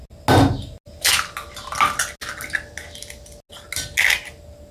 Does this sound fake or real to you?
real